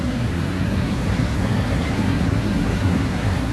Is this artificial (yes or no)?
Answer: yes